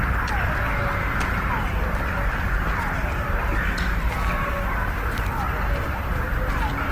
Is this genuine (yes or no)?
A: yes